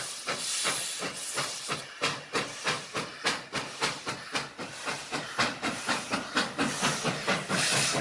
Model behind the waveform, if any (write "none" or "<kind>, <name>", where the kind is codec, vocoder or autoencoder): none